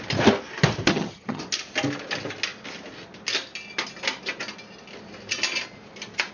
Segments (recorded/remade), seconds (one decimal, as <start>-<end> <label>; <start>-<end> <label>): 0.0-0.9 recorded; 0.9-1.4 remade; 1.4-6.3 recorded